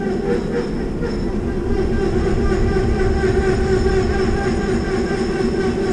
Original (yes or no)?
yes